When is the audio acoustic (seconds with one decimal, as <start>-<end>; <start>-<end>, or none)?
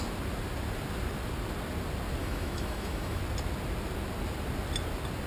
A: 0.0-2.2; 3.2-5.3